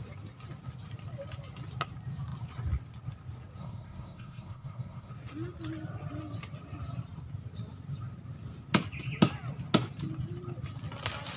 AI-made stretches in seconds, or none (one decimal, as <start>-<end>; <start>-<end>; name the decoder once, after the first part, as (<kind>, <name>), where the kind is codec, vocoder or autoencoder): 3.6-5.1 (codec, SNAC)